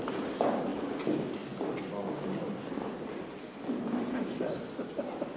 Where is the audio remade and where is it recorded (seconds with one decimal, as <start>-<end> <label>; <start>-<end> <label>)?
0.0-5.4 recorded